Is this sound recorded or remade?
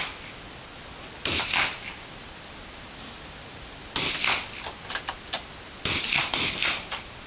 recorded